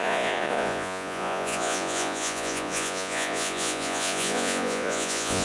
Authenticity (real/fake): fake